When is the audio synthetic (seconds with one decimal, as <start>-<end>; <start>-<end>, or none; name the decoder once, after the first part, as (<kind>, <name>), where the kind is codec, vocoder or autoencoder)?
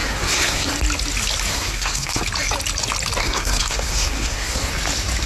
0.0-0.7 (codec, SNAC); 1.5-2.2; 3.2-4.7